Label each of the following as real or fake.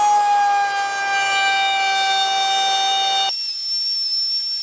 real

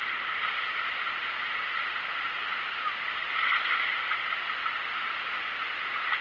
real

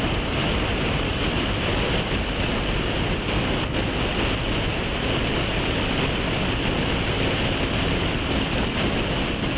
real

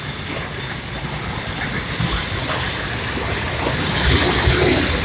real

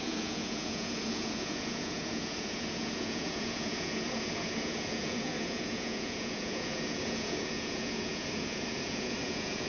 fake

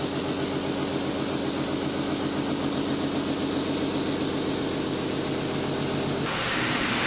real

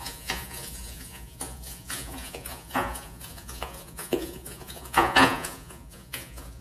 fake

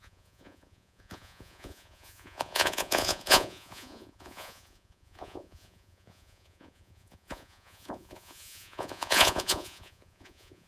fake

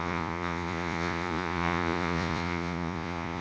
fake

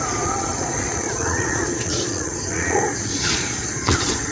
fake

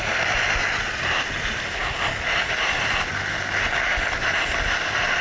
real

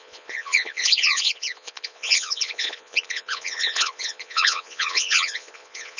fake